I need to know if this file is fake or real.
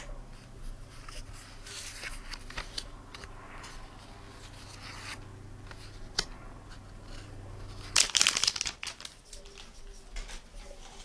real